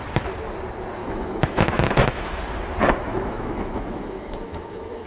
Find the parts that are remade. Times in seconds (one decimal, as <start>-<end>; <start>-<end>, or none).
1.0-2.4; 2.8-5.1

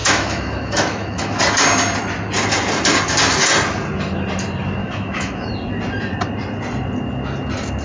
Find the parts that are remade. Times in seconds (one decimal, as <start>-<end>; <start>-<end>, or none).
0.0-1.4; 4.8-5.5

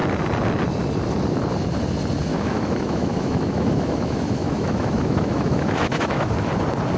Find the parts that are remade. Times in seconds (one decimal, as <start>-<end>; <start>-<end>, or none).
2.3-6.5

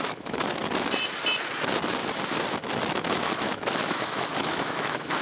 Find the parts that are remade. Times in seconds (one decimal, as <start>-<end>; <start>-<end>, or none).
0.0-0.6; 2.9-5.2

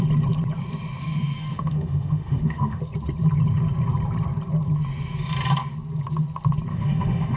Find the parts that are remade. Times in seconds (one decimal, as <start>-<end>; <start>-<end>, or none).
1.0-2.8; 6.7-7.4

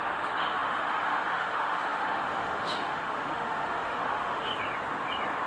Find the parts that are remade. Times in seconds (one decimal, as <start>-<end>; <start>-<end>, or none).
0.0-4.5

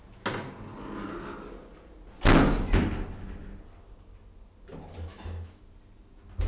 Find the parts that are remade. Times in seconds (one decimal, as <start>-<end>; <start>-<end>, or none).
5.1-5.6